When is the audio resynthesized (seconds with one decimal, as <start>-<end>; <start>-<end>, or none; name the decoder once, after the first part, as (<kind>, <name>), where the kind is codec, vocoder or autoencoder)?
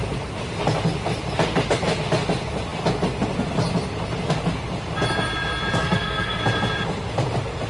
5.8-6.4 (codec, SNAC)